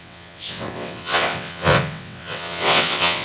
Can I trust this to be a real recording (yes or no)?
no